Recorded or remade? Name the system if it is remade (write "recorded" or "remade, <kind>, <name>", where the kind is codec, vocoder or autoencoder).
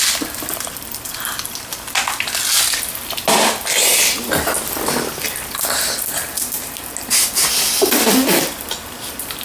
recorded